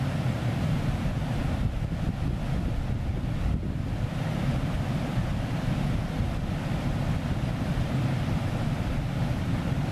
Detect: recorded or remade recorded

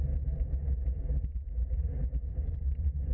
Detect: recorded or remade remade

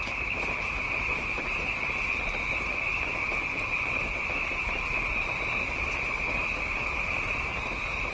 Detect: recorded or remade remade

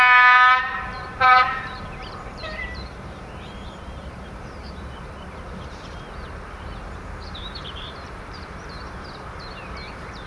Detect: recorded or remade remade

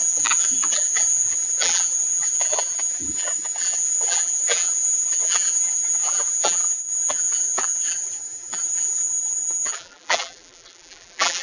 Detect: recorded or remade remade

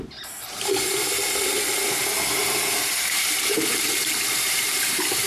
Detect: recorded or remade remade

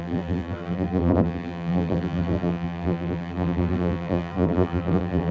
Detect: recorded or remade remade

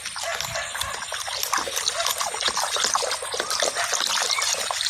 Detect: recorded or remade recorded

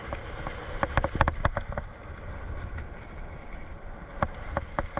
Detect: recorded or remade recorded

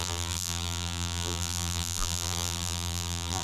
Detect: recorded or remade remade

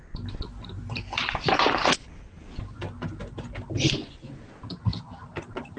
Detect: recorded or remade recorded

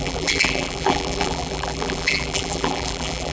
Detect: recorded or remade remade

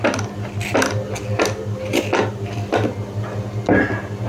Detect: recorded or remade recorded